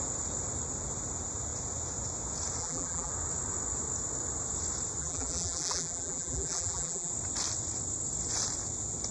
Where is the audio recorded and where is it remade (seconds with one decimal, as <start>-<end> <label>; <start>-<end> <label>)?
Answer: 0.0-2.6 recorded; 2.6-3.1 remade; 3.1-5.0 recorded; 5.0-7.1 remade; 7.1-9.1 recorded